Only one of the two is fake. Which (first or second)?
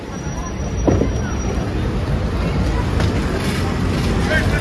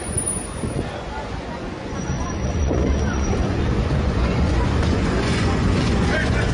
second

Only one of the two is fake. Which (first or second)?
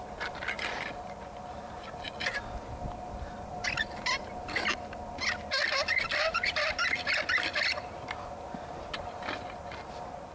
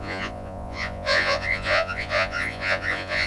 second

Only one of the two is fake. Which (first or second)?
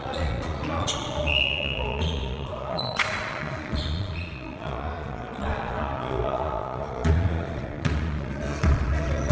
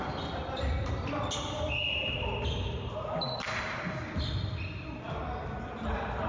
first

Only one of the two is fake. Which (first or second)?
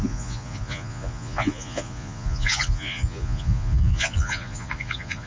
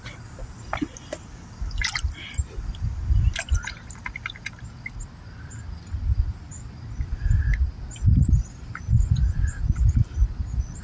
first